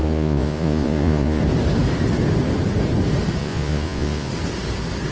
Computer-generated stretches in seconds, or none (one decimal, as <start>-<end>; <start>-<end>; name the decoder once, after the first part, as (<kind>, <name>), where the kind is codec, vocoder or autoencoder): 0.0-1.4 (vocoder, Vocos); 3.4-4.3